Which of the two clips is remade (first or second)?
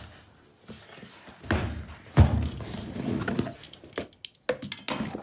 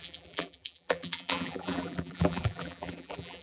second